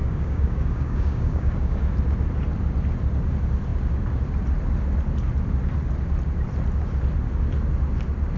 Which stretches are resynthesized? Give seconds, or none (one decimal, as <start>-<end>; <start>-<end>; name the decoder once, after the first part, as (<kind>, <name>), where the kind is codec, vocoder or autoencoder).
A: 0.0-1.8 (codec, DAC)